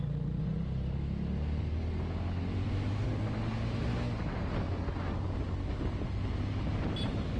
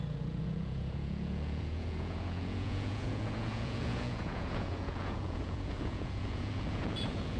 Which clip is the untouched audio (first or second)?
first